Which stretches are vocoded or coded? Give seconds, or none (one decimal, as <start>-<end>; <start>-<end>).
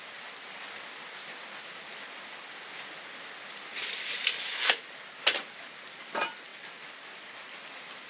1.2-1.9